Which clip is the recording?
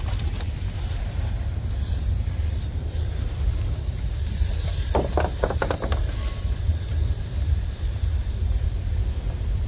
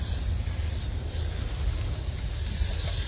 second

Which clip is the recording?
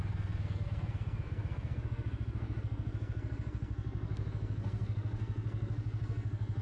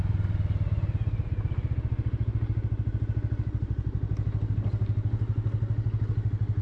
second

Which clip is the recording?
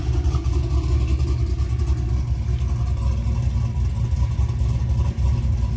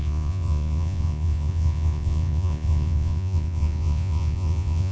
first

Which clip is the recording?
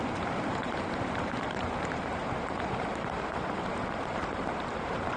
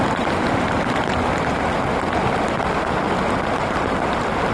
second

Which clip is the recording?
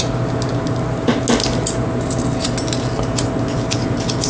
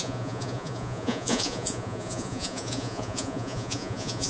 first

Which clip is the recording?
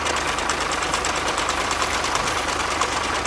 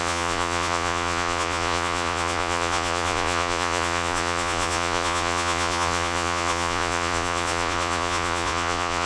first